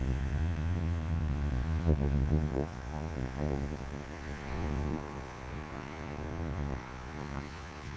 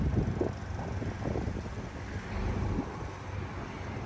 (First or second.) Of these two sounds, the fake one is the first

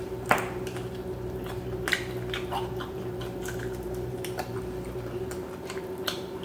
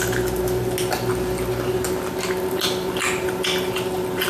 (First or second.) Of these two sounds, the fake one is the first